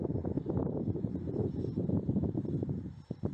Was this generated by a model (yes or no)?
yes